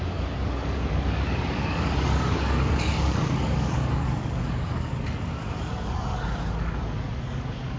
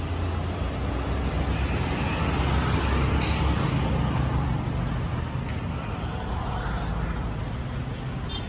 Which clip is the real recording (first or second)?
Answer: second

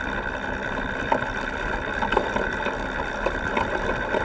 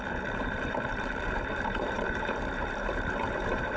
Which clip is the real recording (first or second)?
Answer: first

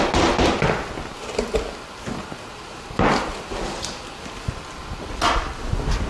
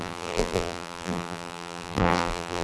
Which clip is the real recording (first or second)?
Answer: first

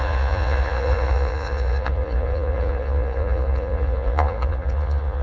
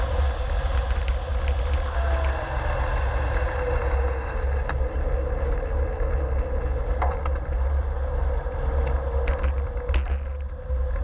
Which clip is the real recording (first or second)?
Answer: second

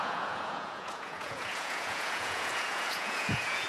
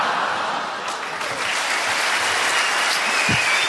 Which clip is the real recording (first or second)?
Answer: second